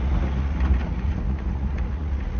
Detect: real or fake fake